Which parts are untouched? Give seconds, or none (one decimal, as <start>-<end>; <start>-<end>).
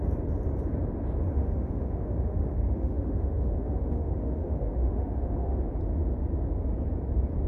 0.0-1.4; 5.6-7.5